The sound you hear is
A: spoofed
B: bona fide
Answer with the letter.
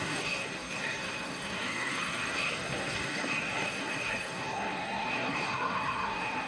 A